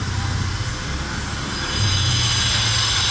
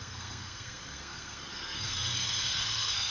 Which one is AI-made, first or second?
second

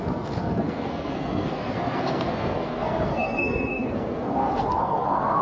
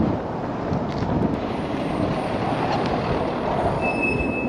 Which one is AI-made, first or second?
first